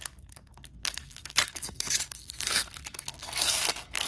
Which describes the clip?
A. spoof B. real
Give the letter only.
A